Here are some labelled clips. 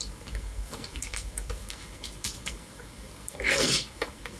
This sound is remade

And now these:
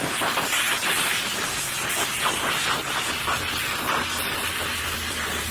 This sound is recorded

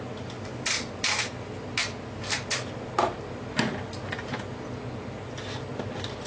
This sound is recorded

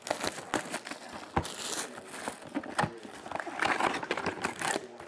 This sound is recorded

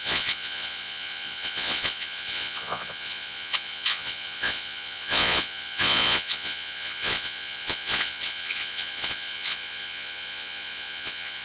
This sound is remade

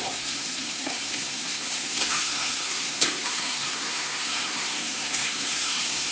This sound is remade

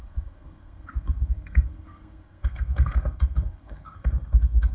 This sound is remade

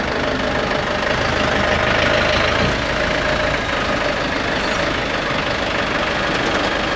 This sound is recorded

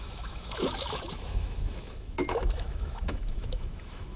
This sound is remade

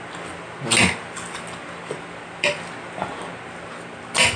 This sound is recorded